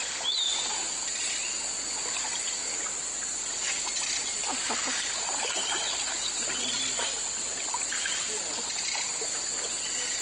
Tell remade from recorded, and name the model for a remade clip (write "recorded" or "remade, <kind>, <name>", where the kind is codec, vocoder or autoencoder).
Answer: recorded